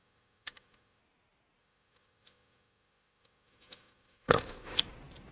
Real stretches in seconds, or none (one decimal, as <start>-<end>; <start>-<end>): 1.0-1.6; 4.8-5.3